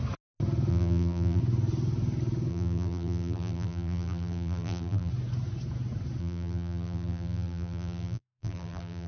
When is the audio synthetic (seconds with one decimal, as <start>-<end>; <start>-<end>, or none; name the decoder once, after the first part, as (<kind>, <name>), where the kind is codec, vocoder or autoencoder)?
0.7-1.4 (vocoder, BigVGAN v2); 2.5-5.1; 6.2-9.1